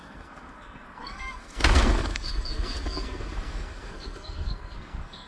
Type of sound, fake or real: fake